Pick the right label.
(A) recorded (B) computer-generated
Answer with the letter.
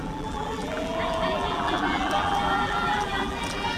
B